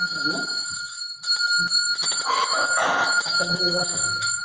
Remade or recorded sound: remade